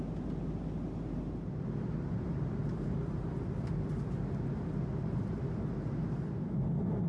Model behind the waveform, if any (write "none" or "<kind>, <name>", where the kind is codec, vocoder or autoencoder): none